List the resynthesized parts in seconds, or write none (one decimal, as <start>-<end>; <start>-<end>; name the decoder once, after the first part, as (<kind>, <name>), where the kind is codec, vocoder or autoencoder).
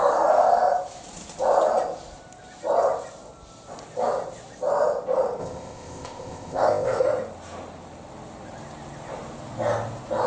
5.4-7.0 (codec, ZipCodec)